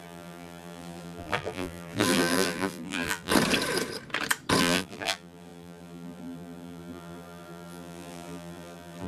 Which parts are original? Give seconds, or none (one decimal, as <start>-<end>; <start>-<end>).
3.3-4.6